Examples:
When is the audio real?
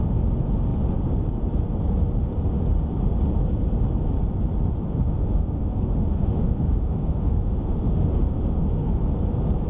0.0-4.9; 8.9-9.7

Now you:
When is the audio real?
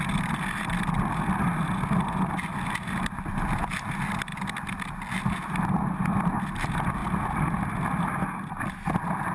0.0-9.3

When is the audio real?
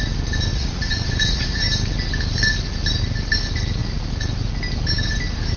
0.0-0.5; 1.6-5.6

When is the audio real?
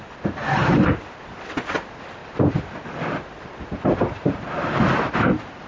0.0-5.7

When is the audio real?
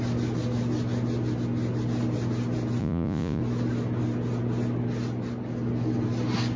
0.0-2.8; 3.4-6.6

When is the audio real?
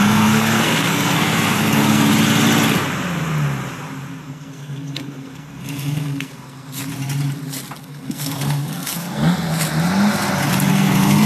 2.1-4.2; 6.8-7.8; 9.5-10.7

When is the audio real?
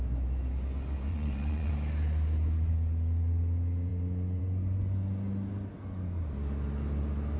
0.0-1.1; 1.7-7.4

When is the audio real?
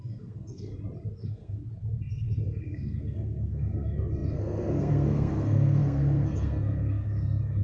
0.7-1.2; 1.6-2.1